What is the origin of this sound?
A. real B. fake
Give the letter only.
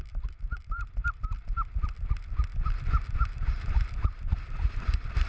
A